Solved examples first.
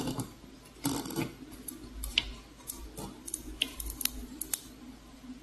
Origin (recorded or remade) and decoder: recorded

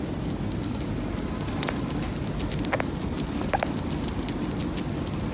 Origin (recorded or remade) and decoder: recorded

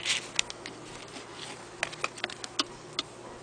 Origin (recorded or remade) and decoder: recorded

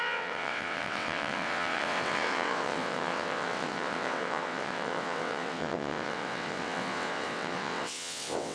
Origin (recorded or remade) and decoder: remade, vocoder, WaveNeXt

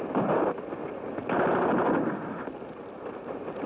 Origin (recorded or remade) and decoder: recorded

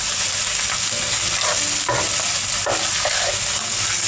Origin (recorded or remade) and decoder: recorded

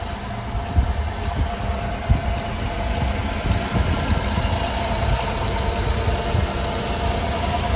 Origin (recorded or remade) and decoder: recorded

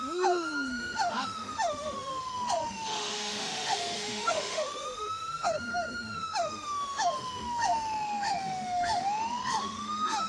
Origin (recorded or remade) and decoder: remade, autoencoder, DAC-VAE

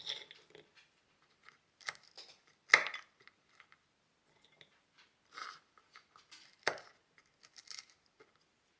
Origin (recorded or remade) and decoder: recorded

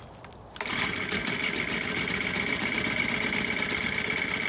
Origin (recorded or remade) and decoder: recorded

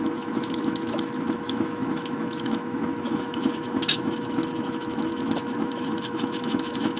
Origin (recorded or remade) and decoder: remade, autoencoder, DAC-VAE